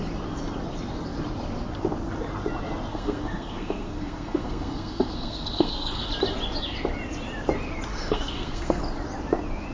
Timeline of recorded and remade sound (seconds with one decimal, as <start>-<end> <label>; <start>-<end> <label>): 0.0-2.9 recorded; 2.9-6.1 remade; 6.1-7.9 recorded; 7.9-8.8 remade; 8.8-9.7 recorded